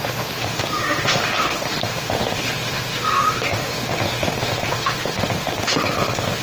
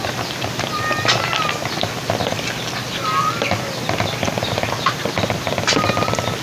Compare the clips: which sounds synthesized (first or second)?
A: first